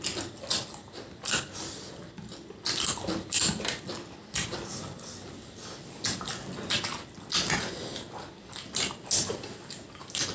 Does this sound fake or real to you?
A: real